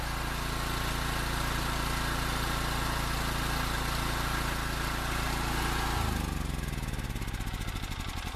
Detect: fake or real real